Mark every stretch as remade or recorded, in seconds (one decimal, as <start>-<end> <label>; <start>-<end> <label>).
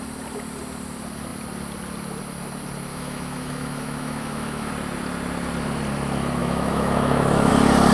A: 0.0-2.9 recorded; 2.9-4.7 remade; 4.7-6.4 recorded; 6.4-7.5 remade; 7.5-7.9 recorded